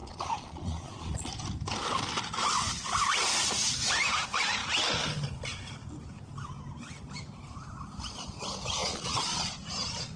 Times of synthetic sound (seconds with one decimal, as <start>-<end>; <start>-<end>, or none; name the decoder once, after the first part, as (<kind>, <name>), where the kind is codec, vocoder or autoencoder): 0.0-1.3 (vocoder, Vocos); 8.8-9.5